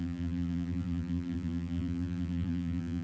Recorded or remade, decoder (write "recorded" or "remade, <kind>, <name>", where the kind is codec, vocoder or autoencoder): remade, vocoder, BigVGAN v2